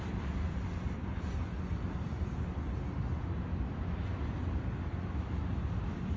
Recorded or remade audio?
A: recorded